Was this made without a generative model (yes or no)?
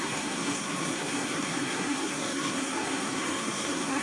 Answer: no